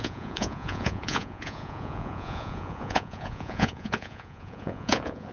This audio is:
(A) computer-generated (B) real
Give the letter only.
A